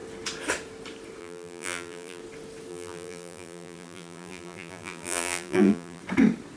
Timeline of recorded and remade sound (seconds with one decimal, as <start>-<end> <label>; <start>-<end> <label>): 0.0-1.2 recorded; 1.2-2.2 remade; 2.2-2.7 recorded; 2.7-6.0 remade; 6.0-6.6 recorded